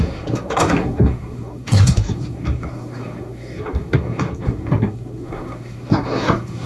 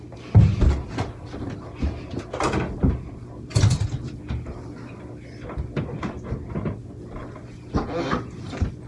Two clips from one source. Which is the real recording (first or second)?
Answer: second